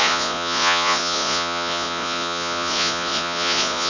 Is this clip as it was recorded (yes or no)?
no